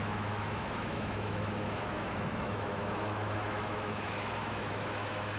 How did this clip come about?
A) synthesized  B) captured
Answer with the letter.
A